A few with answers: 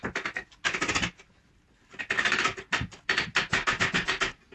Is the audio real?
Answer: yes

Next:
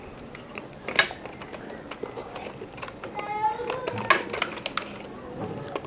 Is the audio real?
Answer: yes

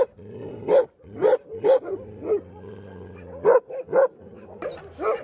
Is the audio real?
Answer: yes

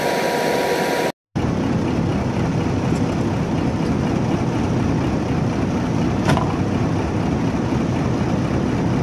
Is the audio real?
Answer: yes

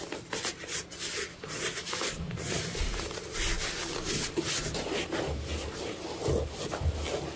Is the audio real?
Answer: yes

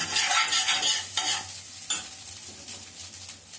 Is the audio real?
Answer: yes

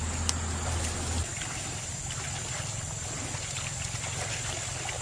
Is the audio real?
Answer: yes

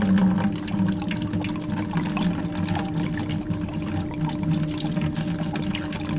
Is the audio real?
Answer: yes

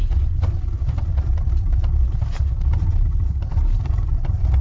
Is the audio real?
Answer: no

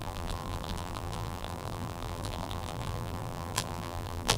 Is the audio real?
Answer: no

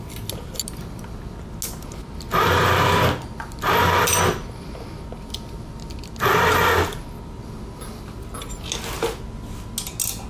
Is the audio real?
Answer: yes